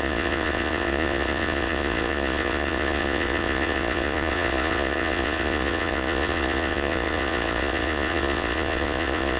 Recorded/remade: remade